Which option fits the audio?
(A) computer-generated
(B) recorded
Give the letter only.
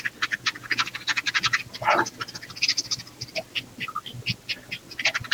B